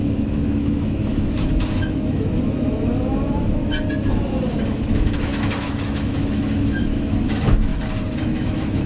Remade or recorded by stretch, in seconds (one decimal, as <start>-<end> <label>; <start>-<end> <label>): 0.0-3.6 remade; 3.6-4.1 recorded; 4.1-7.7 remade; 7.7-8.2 recorded; 8.2-8.9 remade